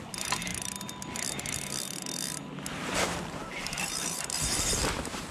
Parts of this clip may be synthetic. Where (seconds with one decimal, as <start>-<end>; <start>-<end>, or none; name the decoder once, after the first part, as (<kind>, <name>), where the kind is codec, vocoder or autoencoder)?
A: 3.4-5.3 (vocoder, BigVGAN v2)